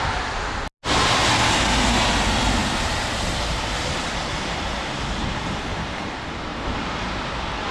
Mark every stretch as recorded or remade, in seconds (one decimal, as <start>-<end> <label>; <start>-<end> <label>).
0.0-2.6 recorded; 2.6-6.1 remade; 6.1-6.5 recorded; 6.5-7.1 remade; 7.1-7.7 recorded